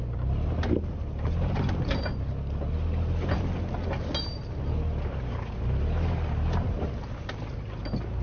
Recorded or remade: recorded